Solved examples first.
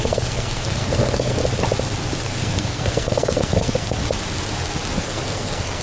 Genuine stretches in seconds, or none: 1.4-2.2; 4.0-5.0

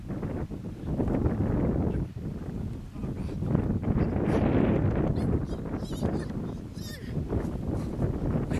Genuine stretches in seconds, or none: 0.0-8.6

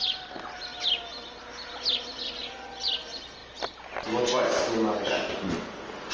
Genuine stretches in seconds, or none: 0.0-6.1

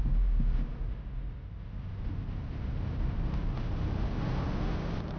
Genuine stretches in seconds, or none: 0.0-5.2

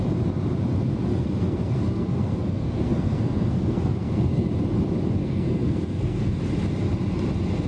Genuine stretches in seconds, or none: 0.0-1.1; 4.5-5.2; 6.4-7.7